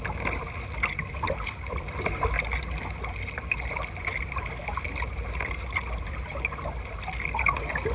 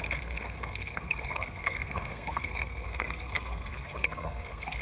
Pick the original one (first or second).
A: first